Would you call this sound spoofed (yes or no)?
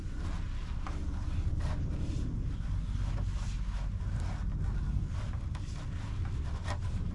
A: no